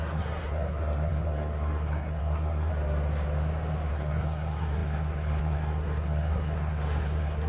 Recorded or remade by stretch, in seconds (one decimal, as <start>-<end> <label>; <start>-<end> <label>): 0.0-2.7 remade; 2.7-3.9 recorded; 3.9-7.5 remade